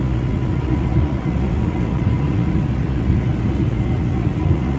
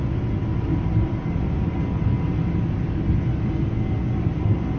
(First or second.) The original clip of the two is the second